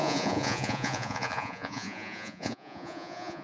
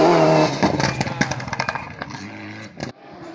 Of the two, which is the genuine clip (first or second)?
second